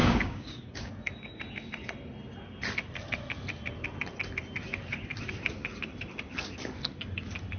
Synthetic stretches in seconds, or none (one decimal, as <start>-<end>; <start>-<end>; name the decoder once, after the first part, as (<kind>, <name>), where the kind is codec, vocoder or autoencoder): 0.0-0.9 (codec, DAC)